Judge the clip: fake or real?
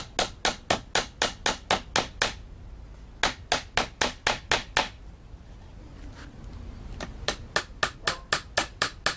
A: real